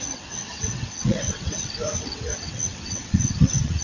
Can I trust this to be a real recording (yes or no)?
no